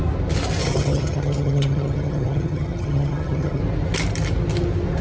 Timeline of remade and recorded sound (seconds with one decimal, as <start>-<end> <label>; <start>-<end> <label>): 0.0-0.6 recorded; 0.6-3.6 remade; 3.6-5.0 recorded